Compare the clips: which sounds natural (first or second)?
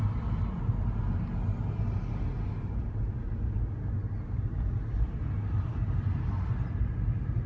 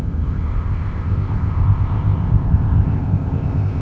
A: first